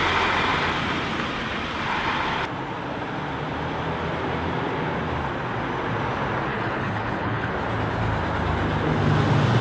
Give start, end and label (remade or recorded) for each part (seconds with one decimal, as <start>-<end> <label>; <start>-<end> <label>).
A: 0.0-6.5 recorded; 6.5-7.5 remade; 7.5-9.6 recorded

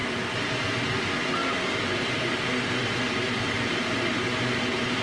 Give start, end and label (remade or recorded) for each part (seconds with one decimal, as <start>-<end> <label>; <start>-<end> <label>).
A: 0.0-5.0 recorded

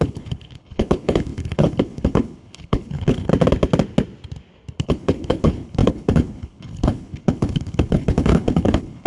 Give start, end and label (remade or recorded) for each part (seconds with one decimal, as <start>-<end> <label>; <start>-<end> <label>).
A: 0.0-3.3 remade; 3.3-4.8 recorded; 4.8-9.1 remade

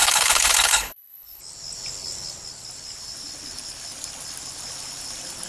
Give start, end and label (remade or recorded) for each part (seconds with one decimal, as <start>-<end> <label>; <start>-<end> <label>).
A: 0.0-1.4 remade; 1.4-5.5 recorded

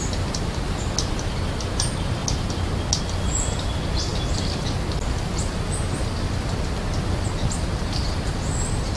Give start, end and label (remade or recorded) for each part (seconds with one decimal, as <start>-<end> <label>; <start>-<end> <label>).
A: 0.0-9.0 recorded

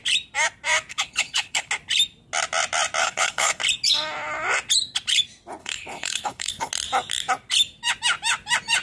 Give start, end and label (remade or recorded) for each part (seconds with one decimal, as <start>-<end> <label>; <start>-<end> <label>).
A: 0.0-0.9 recorded; 0.9-1.7 remade; 1.7-3.0 recorded; 3.0-3.6 remade; 3.6-5.6 recorded; 5.6-6.7 remade; 6.7-8.8 recorded

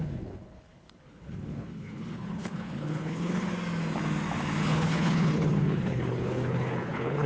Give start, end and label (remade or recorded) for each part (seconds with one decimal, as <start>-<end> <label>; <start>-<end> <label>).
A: 0.0-3.5 remade; 3.5-4.6 recorded; 4.6-7.3 remade

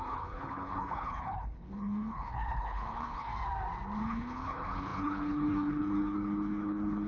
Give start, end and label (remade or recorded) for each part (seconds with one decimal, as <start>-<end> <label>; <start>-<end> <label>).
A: 0.0-3.3 remade; 3.3-4.0 recorded; 4.0-7.1 remade